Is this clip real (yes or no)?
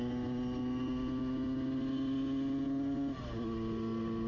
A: yes